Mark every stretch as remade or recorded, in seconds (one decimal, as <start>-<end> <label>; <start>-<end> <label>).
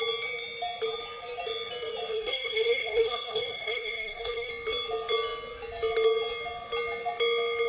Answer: 0.0-2.1 recorded; 2.1-4.5 remade; 4.5-7.7 recorded